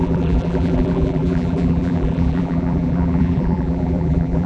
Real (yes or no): no